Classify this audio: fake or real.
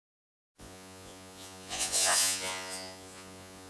fake